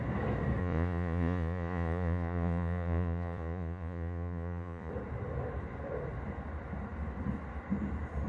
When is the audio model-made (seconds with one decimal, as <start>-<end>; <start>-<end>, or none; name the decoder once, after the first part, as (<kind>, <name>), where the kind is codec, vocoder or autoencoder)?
0.6-4.9 (vocoder, Vocos)